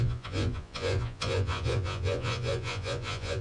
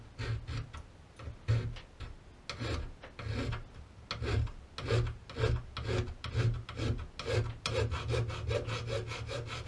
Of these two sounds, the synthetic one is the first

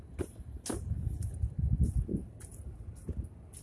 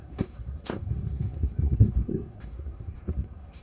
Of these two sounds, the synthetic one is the second